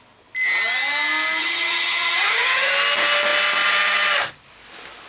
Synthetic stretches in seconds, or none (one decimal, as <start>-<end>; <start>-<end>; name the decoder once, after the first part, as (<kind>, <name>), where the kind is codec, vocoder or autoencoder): 1.4-2.7 (vocoder, HiFi-GAN)

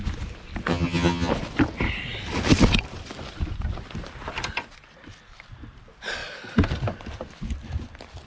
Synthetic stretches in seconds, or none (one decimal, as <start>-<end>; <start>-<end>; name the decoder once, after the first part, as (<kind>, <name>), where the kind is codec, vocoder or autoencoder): 0.7-1.3 (vocoder, HiFi-GAN)